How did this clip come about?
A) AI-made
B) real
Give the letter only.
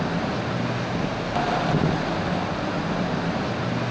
B